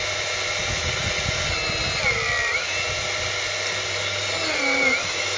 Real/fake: real